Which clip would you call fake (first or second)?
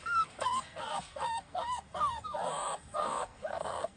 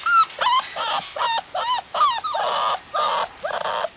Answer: first